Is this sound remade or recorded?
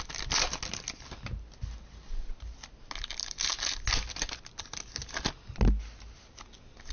recorded